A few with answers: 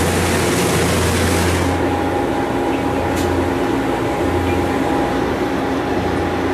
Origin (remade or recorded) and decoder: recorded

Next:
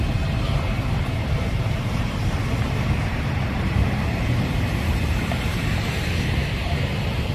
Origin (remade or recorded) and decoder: remade, vocoder, BigVGAN v2